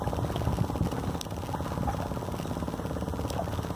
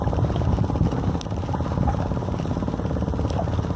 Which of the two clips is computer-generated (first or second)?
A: second